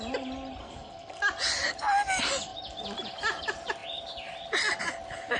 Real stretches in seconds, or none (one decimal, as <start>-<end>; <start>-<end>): 0.0-0.6; 1.2-5.4